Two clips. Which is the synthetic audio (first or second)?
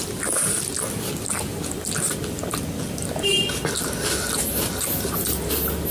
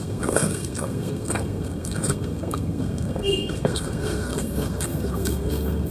second